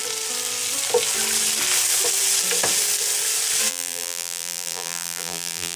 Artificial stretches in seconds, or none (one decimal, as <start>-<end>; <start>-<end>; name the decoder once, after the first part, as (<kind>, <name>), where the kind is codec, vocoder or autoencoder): 3.7-5.8 (vocoder, BigVGAN v2)